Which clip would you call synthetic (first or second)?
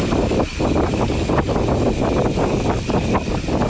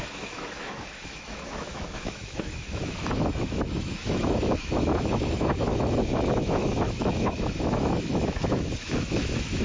second